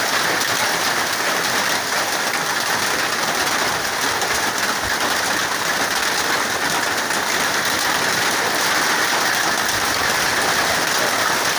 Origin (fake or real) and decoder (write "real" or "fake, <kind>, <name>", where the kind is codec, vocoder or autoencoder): real